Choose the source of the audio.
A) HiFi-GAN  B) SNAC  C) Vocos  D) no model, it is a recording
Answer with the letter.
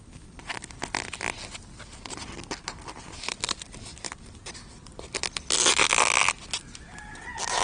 D